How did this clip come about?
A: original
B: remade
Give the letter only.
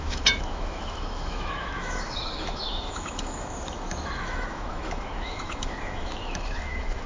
B